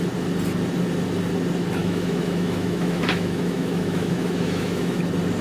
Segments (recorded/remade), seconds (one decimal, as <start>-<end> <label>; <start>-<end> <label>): 0.0-1.8 recorded; 1.8-5.0 remade; 5.0-5.4 recorded